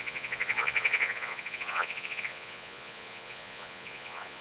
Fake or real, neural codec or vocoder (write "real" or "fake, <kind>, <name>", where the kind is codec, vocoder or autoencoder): fake, vocoder, Vocos